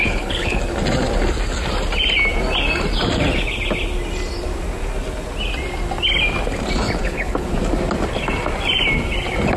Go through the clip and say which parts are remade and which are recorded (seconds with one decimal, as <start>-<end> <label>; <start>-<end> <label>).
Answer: 0.0-0.6 remade; 0.6-7.0 recorded; 7.0-7.5 remade; 7.5-9.6 recorded